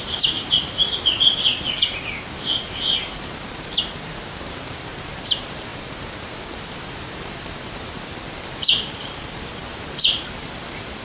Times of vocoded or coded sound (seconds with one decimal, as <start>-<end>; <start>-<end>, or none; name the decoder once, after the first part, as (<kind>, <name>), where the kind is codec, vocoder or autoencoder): 0.0-11.0 (vocoder, BigVGAN v2)